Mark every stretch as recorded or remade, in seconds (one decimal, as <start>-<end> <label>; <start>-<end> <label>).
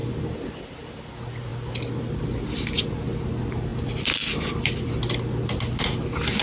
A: 0.0-6.4 recorded